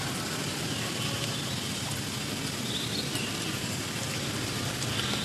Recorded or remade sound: recorded